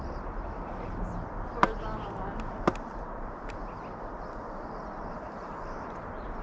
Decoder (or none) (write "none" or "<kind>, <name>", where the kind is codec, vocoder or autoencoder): none